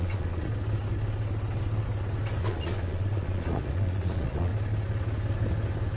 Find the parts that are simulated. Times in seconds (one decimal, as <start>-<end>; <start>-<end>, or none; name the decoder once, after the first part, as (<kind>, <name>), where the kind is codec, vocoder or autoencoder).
0.0-0.5 (vocoder, Vocos); 2.4-4.5